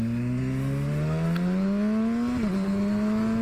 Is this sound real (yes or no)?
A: yes